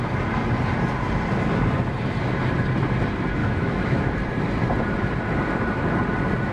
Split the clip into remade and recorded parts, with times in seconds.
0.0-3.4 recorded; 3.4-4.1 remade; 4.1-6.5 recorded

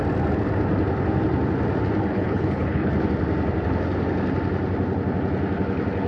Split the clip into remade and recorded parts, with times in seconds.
0.0-2.1 recorded; 2.1-2.9 remade; 2.9-6.1 recorded

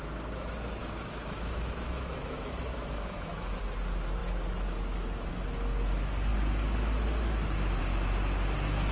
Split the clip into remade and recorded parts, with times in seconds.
0.0-0.8 recorded; 0.8-3.6 remade; 3.6-8.9 recorded